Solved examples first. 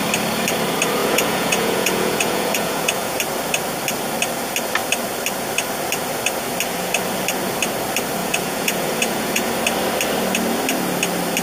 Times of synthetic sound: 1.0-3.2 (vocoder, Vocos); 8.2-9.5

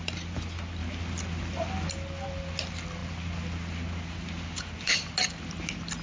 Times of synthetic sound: none

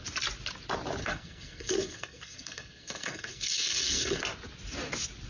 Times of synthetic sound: 1.0-4.2 (codec, SNAC)

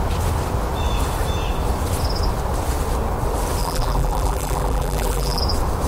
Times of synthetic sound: 3.6-5.4 (vocoder, BigVGAN v2)